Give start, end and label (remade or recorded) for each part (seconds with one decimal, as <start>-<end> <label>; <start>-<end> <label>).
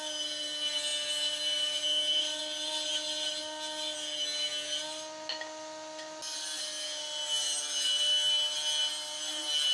0.0-9.7 recorded